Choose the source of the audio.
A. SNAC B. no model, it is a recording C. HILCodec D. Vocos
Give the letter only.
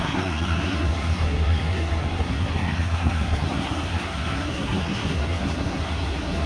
A